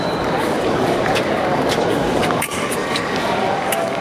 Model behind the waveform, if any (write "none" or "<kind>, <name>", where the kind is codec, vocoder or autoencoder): codec, DAC